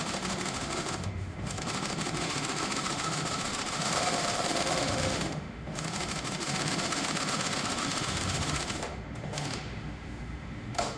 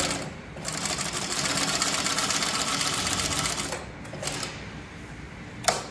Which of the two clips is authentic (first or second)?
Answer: second